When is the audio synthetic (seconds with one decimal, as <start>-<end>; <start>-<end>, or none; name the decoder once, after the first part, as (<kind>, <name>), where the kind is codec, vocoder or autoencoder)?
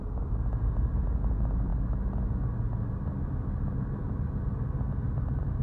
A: none